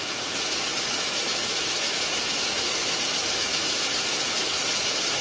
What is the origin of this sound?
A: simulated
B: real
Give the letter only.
A